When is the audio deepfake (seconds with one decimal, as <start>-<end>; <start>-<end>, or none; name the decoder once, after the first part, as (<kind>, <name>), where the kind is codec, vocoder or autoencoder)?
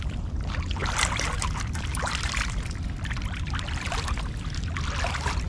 none